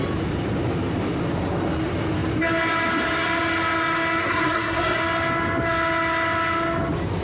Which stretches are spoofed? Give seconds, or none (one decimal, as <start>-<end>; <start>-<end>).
4.2-5.0